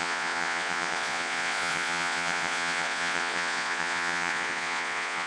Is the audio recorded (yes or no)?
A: no